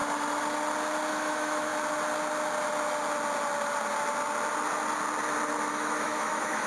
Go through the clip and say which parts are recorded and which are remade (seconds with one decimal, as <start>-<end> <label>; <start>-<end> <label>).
0.0-1.1 recorded; 1.1-1.7 remade; 1.7-5.7 recorded; 5.7-6.7 remade